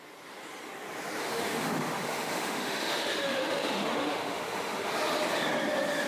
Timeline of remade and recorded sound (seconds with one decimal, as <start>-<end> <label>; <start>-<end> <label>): 0.0-1.2 recorded; 1.2-4.9 remade; 4.9-6.1 recorded